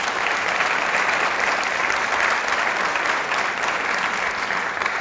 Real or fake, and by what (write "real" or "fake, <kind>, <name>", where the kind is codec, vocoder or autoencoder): real